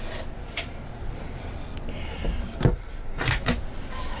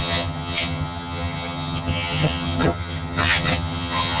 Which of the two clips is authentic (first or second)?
first